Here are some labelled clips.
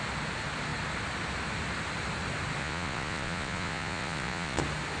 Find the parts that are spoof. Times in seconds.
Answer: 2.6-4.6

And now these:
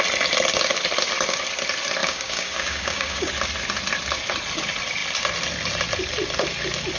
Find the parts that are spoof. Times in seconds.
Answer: 2.0-3.3

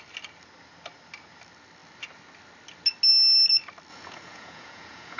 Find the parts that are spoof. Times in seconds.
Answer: 3.9-5.2